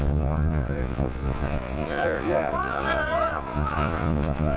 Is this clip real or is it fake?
fake